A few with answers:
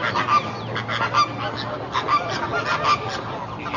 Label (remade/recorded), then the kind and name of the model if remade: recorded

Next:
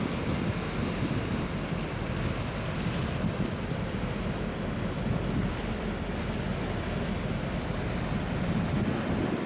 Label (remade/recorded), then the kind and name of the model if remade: recorded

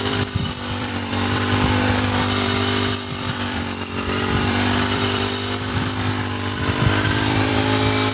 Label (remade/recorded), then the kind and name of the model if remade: remade, vocoder, BigVGAN v2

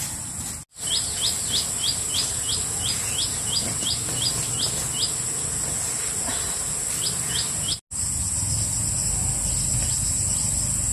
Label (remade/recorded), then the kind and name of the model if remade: recorded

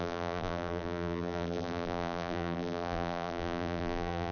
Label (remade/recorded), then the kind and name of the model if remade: remade, vocoder, BigVGAN v2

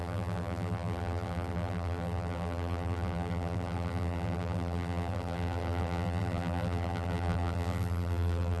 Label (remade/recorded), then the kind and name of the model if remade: remade, vocoder, BigVGAN v2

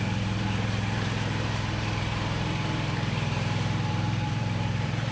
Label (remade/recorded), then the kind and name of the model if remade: remade, vocoder, BigVGAN v2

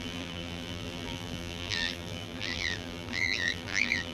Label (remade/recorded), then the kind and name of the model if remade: remade, vocoder, BigVGAN v2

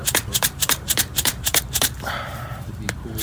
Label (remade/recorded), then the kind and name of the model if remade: remade, vocoder, BigVGAN v2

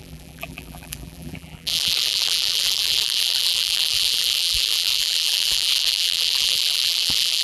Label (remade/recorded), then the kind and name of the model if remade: remade, vocoder, BigVGAN v2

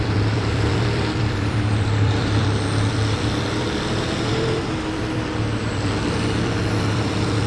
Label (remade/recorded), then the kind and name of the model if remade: remade, vocoder, BigVGAN v2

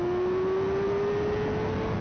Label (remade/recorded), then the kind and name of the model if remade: recorded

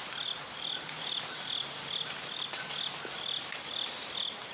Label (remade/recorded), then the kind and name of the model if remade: remade, vocoder, BigVGAN v2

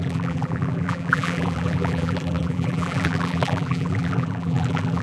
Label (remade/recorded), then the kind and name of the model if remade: remade, vocoder, BigVGAN v2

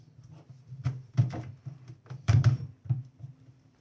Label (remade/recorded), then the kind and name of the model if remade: remade, vocoder, BigVGAN v2